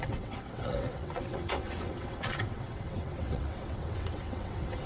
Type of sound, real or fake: fake